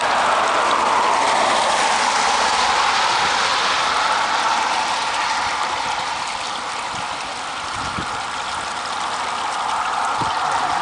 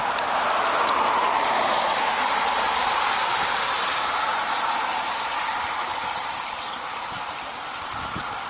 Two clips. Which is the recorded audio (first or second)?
first